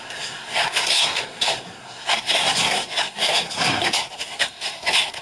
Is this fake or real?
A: fake